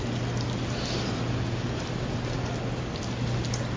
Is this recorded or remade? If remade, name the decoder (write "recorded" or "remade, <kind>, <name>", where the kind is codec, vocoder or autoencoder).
recorded